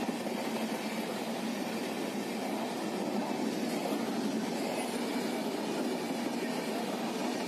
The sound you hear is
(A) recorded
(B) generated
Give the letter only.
A